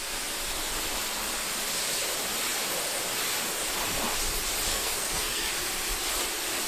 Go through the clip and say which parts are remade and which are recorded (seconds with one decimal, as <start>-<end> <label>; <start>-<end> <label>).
0.0-4.7 recorded; 4.7-5.5 remade; 5.5-6.7 recorded